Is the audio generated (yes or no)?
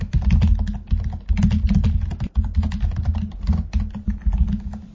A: no